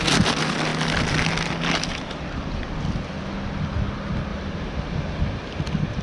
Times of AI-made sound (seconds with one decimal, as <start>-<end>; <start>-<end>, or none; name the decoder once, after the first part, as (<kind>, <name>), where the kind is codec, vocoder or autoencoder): 4.3-5.6 (vocoder, BigVGAN v2)